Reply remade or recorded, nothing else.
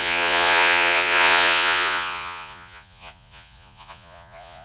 remade